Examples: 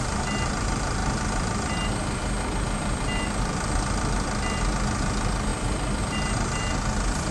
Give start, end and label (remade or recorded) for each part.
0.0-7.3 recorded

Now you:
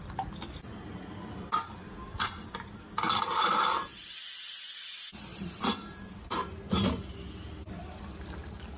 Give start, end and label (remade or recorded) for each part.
0.0-5.3 recorded; 5.3-6.6 remade; 6.6-8.8 recorded

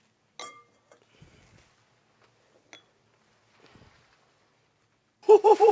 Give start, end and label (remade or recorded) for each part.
0.0-5.0 recorded; 5.0-5.7 remade

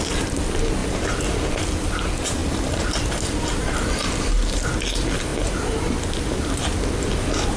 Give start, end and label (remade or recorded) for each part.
0.0-0.8 recorded; 0.8-1.6 remade; 1.6-2.4 recorded; 2.4-4.8 remade; 4.8-7.6 recorded

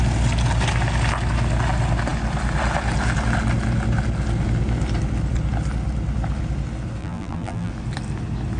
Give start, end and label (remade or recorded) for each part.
0.0-7.0 recorded; 7.0-7.7 remade; 7.7-8.6 recorded

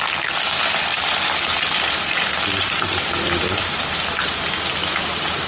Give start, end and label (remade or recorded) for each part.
0.0-0.9 recorded; 0.9-3.8 remade; 3.8-5.5 recorded